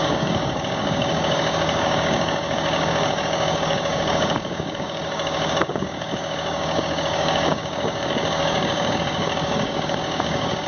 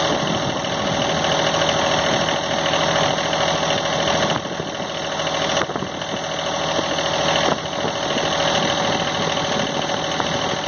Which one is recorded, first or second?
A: second